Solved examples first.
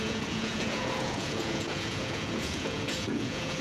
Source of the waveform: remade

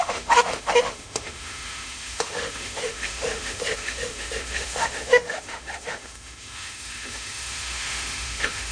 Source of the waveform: remade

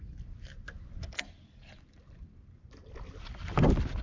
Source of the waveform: recorded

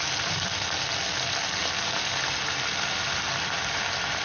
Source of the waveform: recorded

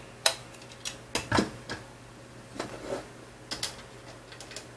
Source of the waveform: recorded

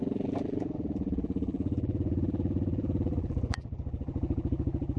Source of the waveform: remade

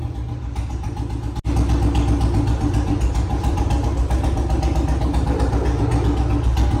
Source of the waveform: recorded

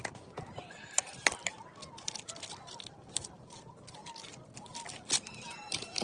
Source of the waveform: recorded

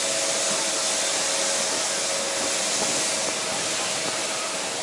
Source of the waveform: recorded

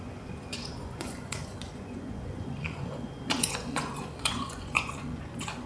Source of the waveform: remade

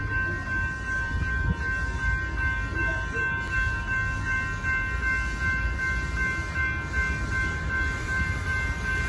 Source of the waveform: recorded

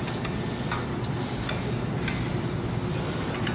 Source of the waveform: recorded